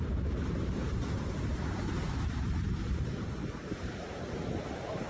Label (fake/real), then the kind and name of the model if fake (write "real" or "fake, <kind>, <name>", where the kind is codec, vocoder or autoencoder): fake, vocoder, BigVGAN v2